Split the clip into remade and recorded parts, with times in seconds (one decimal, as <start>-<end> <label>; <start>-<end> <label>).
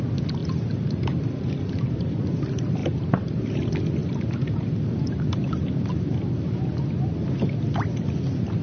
0.0-0.4 recorded; 0.4-2.2 remade; 2.2-2.8 recorded; 2.8-3.4 remade; 3.4-4.0 recorded; 4.0-5.7 remade; 5.7-8.6 recorded